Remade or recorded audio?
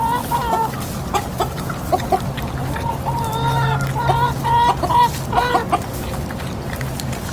recorded